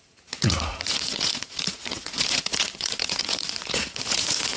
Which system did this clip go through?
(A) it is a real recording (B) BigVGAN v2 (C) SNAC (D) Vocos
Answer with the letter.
D